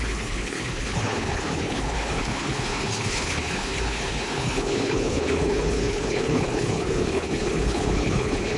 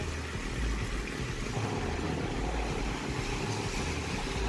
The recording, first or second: second